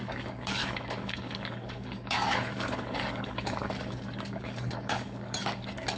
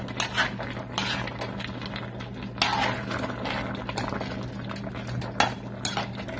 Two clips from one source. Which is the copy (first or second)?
first